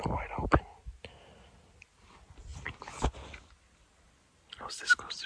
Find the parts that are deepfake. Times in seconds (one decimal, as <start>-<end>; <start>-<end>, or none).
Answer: none